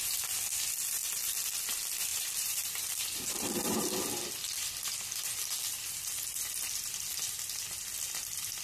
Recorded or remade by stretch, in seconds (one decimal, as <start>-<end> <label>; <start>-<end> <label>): 0.0-2.1 recorded; 2.1-3.8 remade; 3.8-8.6 recorded